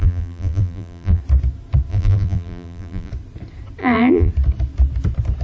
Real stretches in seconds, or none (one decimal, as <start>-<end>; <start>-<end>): 1.2-1.9; 3.1-3.8; 4.3-5.4